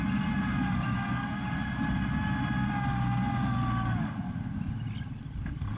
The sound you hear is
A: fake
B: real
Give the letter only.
B